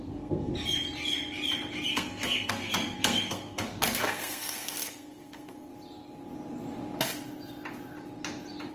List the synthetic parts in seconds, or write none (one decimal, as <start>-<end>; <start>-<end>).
0.0-0.5; 1.9-5.7